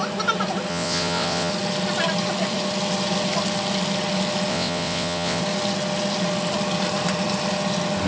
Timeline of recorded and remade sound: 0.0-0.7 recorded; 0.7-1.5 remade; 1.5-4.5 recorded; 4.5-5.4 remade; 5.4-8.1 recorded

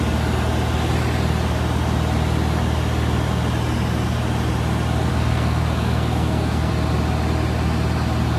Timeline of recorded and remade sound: 0.0-5.1 recorded; 5.1-6.7 remade; 6.7-8.4 recorded